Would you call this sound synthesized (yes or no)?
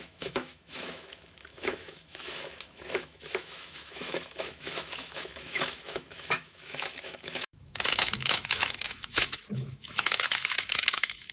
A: yes